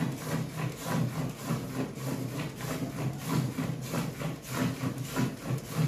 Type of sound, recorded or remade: recorded